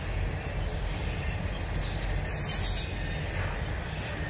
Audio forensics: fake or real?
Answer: real